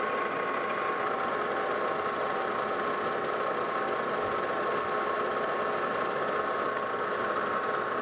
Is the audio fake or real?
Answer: real